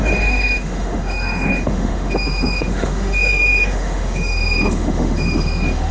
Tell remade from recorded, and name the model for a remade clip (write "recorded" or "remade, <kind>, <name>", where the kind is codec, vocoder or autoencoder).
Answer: remade, autoencoder, DAC-VAE